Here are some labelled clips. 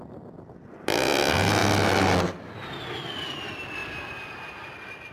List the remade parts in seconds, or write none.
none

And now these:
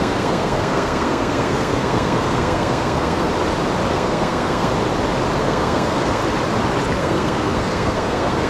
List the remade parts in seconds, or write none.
0.0-3.3 (codec, SNAC); 3.9-4.7; 5.4-6.2; 7.0-8.5